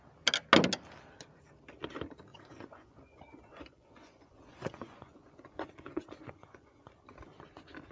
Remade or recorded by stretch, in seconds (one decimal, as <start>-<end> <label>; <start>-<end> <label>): 0.0-2.3 recorded; 2.3-6.9 remade; 6.9-7.9 recorded